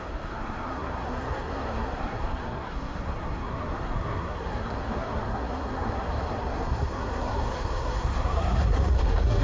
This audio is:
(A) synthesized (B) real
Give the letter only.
A